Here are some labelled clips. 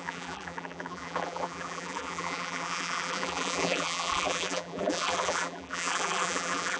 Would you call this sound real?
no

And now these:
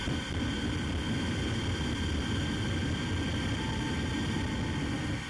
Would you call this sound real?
no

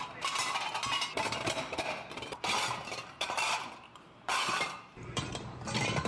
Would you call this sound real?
no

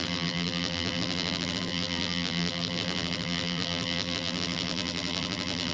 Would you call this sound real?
no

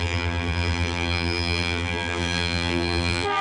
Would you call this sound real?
no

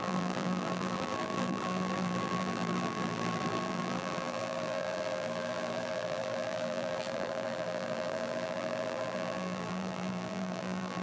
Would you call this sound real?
no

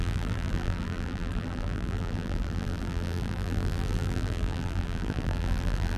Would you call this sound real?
no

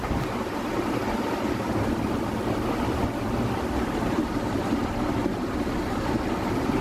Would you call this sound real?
yes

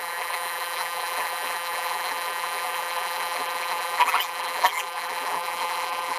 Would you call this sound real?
no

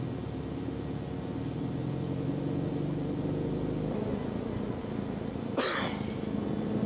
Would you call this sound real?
yes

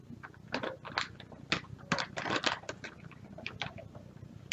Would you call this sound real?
yes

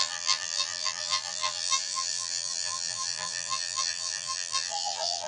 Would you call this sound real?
no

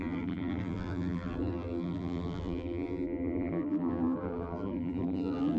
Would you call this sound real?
no